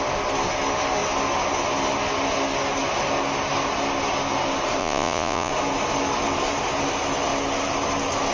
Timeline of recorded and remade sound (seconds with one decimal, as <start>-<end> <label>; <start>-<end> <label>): 0.0-4.8 recorded; 4.8-5.5 remade; 5.5-8.3 recorded

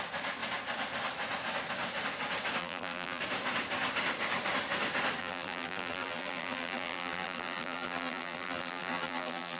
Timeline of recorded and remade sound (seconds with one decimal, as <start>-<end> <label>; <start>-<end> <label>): 0.0-2.6 recorded; 2.6-3.2 remade; 3.2-5.2 recorded; 5.2-9.6 remade

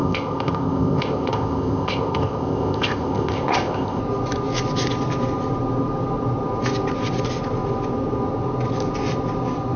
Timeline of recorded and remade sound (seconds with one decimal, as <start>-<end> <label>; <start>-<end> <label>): 0.0-4.0 remade; 4.0-9.8 recorded

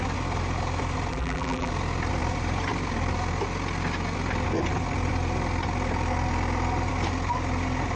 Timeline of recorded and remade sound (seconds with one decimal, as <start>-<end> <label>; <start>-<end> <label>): 0.0-1.1 recorded; 1.1-1.7 remade; 1.7-8.0 recorded

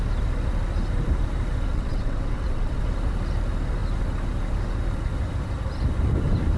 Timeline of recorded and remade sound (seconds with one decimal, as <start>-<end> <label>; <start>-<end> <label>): 0.0-1.7 recorded; 1.7-2.8 remade; 2.8-6.6 recorded

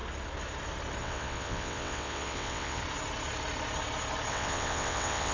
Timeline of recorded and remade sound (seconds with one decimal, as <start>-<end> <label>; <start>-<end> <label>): 0.0-1.0 recorded; 1.0-2.8 remade; 2.8-4.3 recorded; 4.3-5.3 remade

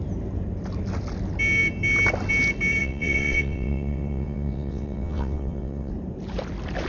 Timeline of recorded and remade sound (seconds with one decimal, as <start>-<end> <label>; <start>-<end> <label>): 0.0-2.8 recorded; 2.8-5.9 remade; 5.9-6.9 recorded

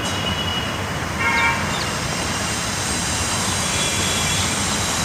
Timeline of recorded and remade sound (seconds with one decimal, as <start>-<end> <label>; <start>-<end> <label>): 0.0-3.9 recorded; 3.9-4.4 remade; 4.4-5.0 recorded